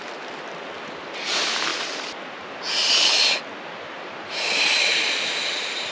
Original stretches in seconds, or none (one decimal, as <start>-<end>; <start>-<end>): 0.0-5.9

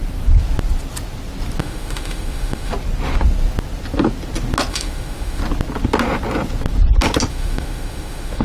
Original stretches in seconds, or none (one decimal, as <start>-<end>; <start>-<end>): 0.0-1.6; 2.7-4.7; 5.4-7.3

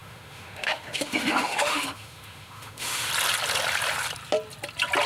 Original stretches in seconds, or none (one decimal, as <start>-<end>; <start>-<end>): 3.1-5.1

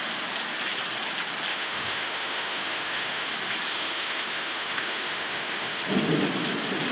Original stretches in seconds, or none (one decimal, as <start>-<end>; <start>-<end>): 0.0-1.5; 3.3-3.7; 5.8-6.9

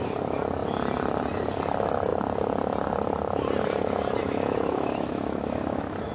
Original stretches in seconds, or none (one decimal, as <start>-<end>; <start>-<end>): 0.0-4.2